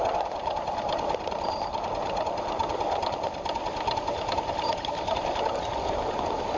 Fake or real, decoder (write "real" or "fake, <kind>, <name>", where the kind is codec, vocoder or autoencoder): real